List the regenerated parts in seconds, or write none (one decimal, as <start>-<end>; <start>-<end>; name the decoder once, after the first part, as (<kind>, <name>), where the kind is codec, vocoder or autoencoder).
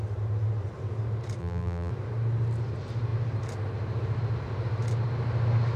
1.4-1.9 (vocoder, BigVGAN v2)